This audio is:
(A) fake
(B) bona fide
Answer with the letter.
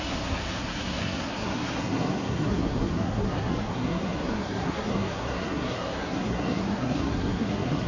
A